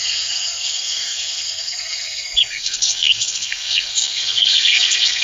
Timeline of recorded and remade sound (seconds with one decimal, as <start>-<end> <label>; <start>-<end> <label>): 0.0-5.2 remade